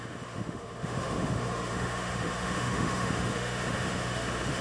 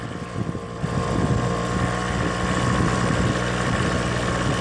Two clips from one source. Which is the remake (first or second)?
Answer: first